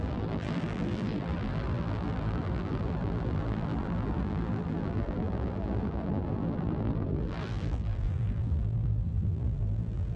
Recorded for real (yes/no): no